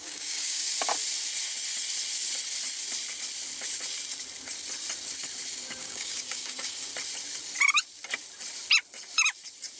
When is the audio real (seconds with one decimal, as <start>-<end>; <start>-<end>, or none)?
0.7-5.8; 6.9-9.8